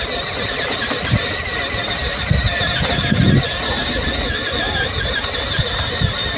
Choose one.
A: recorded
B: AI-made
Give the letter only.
A